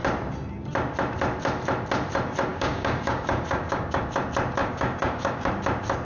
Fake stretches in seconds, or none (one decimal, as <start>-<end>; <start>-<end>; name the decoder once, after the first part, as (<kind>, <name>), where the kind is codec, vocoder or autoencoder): 2.5-4.0 (codec, DAC); 4.6-5.5